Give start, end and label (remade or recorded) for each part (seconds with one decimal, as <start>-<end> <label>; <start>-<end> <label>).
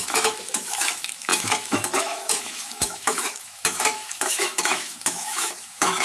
0.0-6.0 remade